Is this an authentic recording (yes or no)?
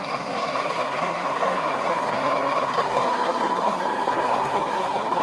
no